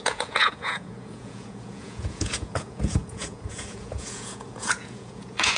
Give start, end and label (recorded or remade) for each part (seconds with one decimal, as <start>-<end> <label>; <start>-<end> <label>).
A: 0.0-5.6 remade